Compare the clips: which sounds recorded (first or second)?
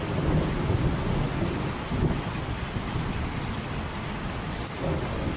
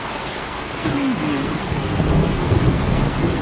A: first